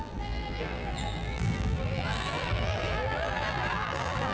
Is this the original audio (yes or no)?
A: no